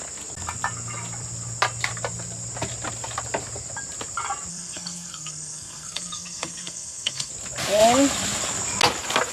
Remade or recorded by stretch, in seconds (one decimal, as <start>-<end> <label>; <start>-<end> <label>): 0.0-4.5 recorded; 4.5-7.3 remade; 7.3-9.3 recorded

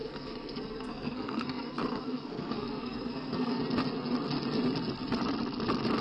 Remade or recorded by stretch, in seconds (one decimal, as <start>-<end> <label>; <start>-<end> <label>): 0.0-3.6 remade; 3.6-6.0 recorded